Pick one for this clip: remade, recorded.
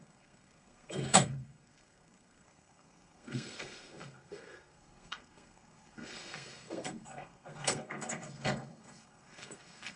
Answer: remade